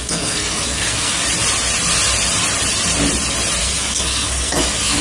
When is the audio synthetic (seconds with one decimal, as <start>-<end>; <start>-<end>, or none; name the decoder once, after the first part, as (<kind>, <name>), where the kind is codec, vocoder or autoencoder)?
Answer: 0.0-1.2 (codec, SNAC); 3.6-5.0